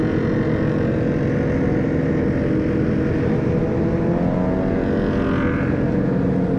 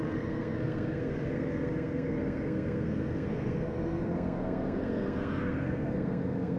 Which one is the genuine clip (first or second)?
first